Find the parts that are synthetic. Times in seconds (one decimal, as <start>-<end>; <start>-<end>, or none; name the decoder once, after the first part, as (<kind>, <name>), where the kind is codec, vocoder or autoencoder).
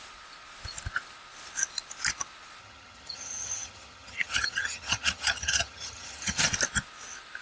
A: 2.6-6.5 (vocoder, HiFi-GAN)